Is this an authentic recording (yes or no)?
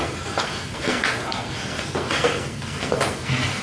no